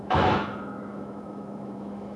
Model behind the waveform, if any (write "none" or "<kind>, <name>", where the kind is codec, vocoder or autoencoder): autoencoder, DAC-VAE